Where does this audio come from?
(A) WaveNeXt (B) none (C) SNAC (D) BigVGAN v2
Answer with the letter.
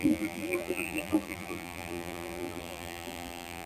D